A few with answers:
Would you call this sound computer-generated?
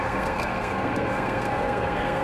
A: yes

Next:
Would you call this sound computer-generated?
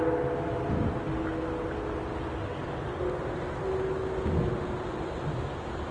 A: no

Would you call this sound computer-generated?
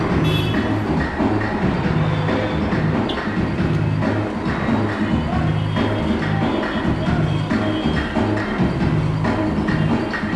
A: no